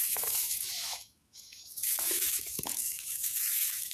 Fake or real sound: fake